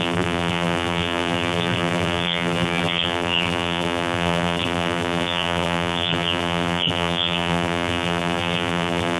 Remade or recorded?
remade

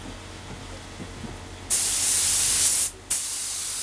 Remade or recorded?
recorded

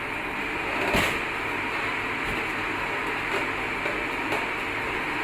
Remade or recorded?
recorded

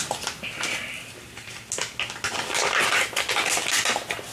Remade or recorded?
recorded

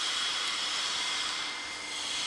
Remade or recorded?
recorded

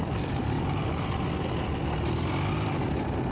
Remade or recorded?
recorded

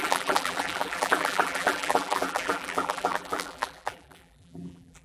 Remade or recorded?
remade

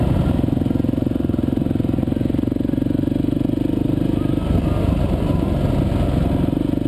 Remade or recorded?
recorded